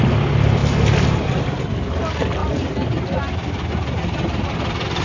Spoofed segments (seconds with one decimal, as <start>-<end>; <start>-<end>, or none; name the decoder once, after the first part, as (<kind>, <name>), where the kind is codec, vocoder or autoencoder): none